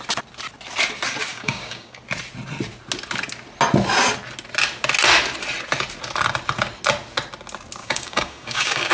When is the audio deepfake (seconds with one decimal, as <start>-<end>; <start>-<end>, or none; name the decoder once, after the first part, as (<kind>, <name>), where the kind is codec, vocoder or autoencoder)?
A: 1.3-2.0 (codec, DAC); 7.8-8.9